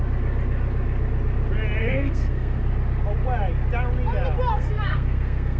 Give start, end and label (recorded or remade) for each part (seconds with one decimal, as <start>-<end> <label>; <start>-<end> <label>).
0.0-1.8 recorded; 1.8-2.6 remade; 2.6-4.5 recorded; 4.5-5.6 remade